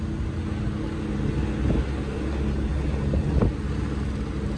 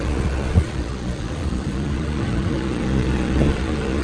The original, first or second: first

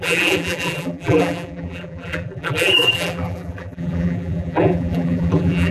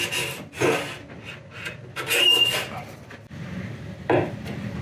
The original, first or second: second